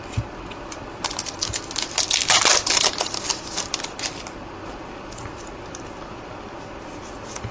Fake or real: real